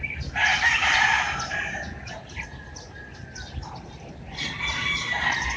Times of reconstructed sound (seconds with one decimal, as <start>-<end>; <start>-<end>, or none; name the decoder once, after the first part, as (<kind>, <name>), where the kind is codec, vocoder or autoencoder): none